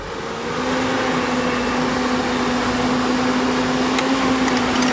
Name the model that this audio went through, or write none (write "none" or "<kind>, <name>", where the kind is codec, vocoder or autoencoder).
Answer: none